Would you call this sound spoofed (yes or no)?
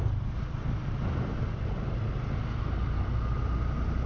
no